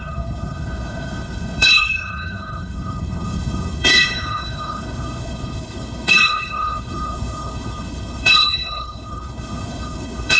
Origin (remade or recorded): remade